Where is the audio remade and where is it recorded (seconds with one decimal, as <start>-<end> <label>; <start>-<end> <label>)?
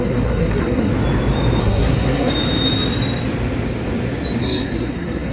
0.0-0.9 remade; 0.9-1.6 recorded; 1.6-2.3 remade; 2.3-4.4 recorded; 4.4-5.3 remade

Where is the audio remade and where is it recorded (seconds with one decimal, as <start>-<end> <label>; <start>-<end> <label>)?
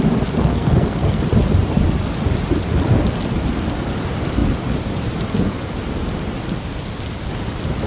0.0-0.4 recorded; 0.4-1.2 remade; 1.2-7.9 recorded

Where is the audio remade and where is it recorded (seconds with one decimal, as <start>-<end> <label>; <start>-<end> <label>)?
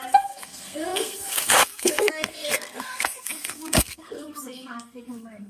0.0-5.5 remade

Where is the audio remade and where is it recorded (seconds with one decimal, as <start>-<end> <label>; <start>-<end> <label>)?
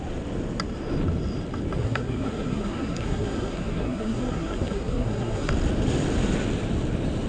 0.0-1.8 recorded; 1.8-5.5 remade; 5.5-7.3 recorded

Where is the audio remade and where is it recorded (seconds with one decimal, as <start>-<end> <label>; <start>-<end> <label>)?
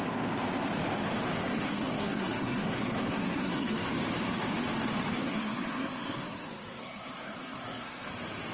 0.0-1.4 recorded; 1.4-3.9 remade; 3.9-5.2 recorded; 5.2-8.1 remade; 8.1-8.5 recorded